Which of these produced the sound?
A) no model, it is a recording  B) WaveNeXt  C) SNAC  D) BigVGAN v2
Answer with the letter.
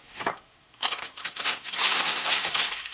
C